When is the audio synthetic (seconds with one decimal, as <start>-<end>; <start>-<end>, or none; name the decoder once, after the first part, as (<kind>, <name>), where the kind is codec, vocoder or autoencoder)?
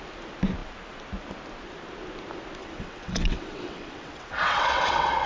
2.6-5.3 (vocoder, WaveNeXt)